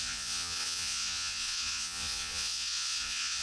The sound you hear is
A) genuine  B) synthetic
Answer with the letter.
B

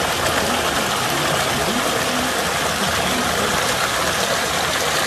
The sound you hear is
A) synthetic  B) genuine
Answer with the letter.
B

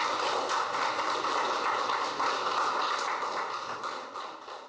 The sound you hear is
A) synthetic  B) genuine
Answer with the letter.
B